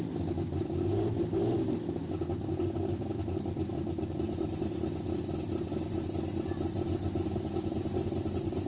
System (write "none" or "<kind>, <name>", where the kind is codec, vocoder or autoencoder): none